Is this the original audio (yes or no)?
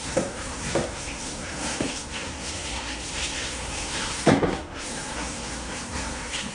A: no